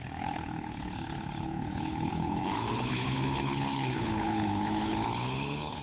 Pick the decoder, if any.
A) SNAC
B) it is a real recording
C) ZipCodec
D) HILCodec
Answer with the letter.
D